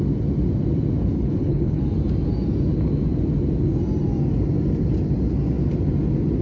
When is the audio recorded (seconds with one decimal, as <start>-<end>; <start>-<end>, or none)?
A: 0.0-1.0; 1.8-6.4